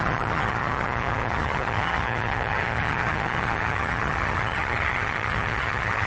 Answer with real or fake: fake